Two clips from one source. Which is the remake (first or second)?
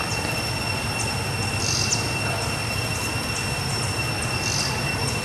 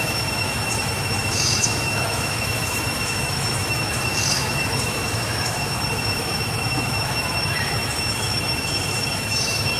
second